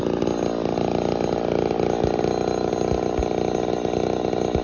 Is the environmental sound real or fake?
real